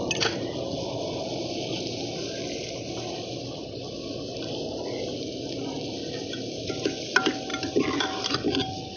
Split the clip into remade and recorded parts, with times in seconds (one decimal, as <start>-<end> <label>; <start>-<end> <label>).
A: 0.0-9.0 recorded